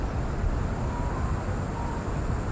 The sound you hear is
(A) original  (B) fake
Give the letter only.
A